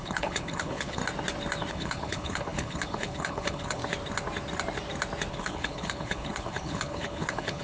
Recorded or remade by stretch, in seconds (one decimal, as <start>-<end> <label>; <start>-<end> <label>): 0.0-1.0 remade; 1.0-1.7 recorded; 1.7-3.8 remade; 3.8-5.3 recorded; 5.3-7.6 remade